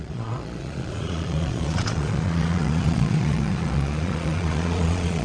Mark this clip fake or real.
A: fake